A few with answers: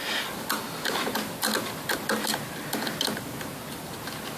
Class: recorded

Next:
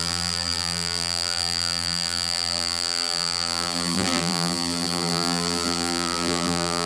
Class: remade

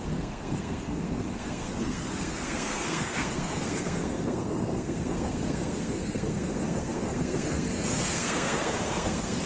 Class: remade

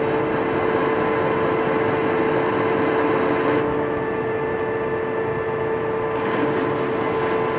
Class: recorded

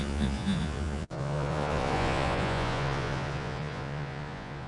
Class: remade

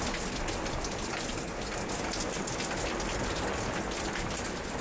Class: recorded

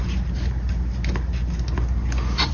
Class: recorded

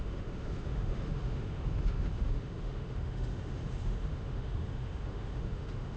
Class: remade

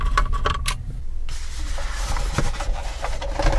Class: recorded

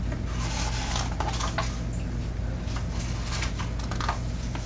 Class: recorded